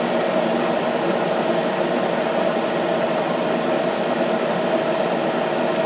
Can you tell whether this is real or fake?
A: real